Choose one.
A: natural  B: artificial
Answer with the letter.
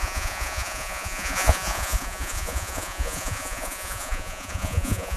B